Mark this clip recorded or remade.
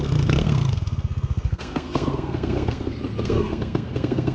remade